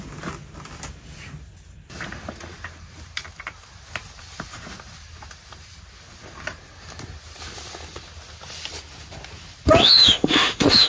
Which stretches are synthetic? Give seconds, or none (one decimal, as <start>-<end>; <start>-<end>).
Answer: 9.8-10.9